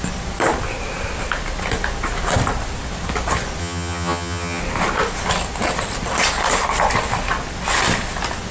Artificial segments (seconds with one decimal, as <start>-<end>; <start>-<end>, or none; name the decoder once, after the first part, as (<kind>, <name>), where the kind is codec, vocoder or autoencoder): 3.6-4.6 (vocoder, HiFi-GAN)